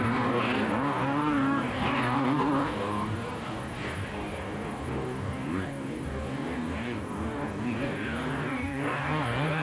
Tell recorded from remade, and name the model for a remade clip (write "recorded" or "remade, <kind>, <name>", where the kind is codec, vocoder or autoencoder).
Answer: remade, codec, DAC